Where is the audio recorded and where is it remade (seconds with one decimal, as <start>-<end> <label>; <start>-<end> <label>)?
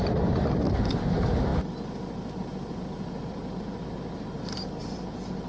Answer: 0.0-5.5 recorded